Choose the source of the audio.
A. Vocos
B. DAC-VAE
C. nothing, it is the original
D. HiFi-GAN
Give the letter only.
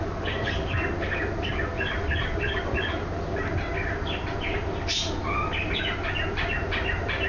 C